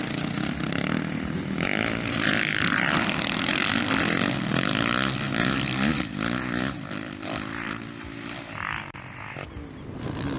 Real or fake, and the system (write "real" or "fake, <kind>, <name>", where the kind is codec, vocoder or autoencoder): real